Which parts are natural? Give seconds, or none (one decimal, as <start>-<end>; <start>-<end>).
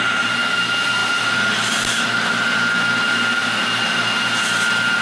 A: 0.0-5.0